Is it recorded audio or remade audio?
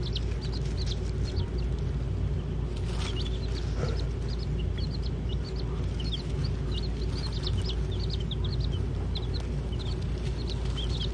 recorded